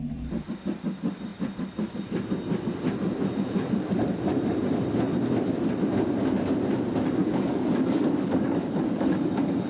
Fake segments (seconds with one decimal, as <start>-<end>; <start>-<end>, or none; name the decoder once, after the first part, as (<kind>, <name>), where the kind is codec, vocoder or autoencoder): 7.2-9.7 (codec, DAC)